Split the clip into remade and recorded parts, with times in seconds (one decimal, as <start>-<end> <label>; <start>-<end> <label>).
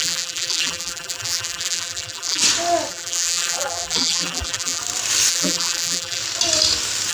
0.0-2.4 remade; 2.4-2.9 recorded; 2.9-4.8 remade; 4.8-5.3 recorded; 5.3-6.2 remade; 6.2-7.1 recorded